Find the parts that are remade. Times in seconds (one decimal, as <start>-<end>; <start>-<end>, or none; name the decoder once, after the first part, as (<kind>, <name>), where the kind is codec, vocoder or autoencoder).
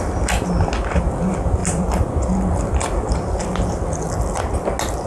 none